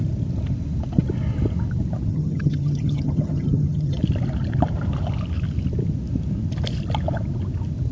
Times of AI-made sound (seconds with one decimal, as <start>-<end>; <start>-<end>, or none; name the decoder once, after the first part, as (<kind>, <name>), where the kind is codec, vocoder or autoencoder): 2.1-4.0 (vocoder, HiFi-GAN)